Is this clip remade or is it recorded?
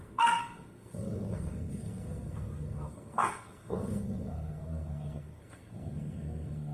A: remade